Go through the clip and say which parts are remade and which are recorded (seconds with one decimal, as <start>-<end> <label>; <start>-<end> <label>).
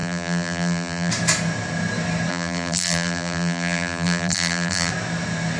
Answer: 0.0-1.1 remade; 1.1-2.3 recorded; 2.3-4.9 remade; 4.9-5.6 recorded